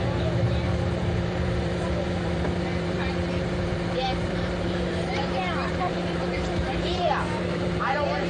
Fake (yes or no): yes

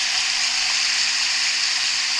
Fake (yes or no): no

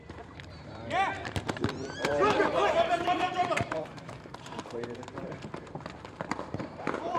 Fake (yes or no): yes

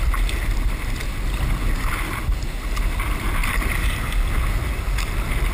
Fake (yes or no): no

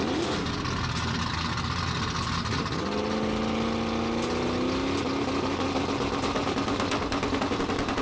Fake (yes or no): no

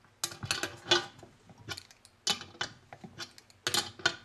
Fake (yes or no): no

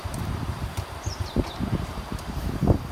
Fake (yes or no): yes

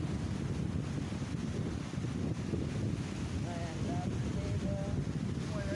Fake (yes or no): no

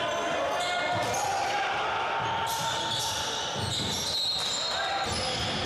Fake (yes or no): no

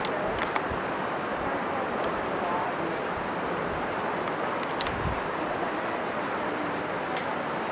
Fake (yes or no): yes